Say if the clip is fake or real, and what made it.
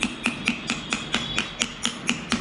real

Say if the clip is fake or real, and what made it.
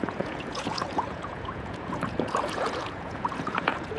fake, vocoder, Vocos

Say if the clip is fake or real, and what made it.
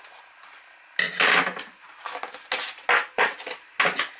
real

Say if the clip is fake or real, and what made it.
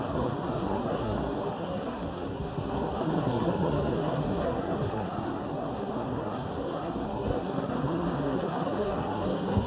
fake, codec, SNAC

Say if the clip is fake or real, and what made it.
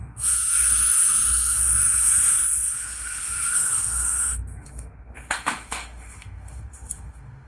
fake, autoencoder, DAC-VAE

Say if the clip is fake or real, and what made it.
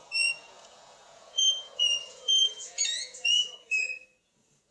fake, vocoder, Vocos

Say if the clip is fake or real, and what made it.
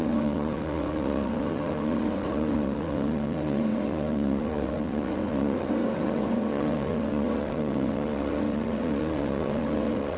fake, vocoder, WaveNeXt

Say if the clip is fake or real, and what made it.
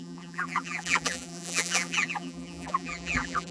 fake, vocoder, BigVGAN v2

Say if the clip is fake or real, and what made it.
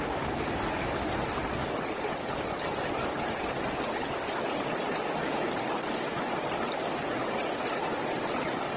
real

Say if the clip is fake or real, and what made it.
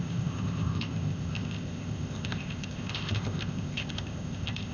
fake, codec, ZipCodec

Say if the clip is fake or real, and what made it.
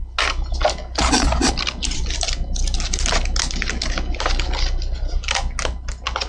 real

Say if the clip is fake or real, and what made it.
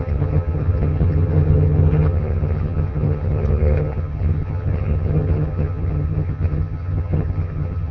fake, vocoder, HiFi-GAN